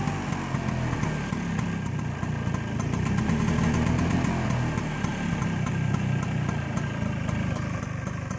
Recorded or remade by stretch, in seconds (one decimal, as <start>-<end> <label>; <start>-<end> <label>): 0.0-8.4 recorded